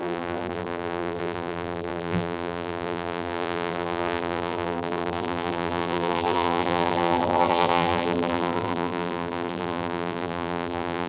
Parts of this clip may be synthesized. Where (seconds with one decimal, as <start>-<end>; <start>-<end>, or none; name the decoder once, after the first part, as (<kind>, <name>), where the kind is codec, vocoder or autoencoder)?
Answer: 0.0-11.1 (vocoder, BigVGAN v2)